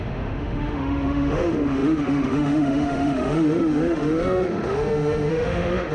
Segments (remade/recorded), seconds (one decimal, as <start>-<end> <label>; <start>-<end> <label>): 0.0-5.9 remade